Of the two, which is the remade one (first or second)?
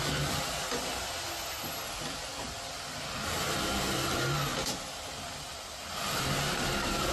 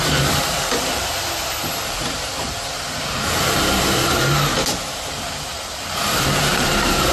second